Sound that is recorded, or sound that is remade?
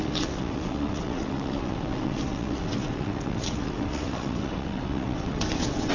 remade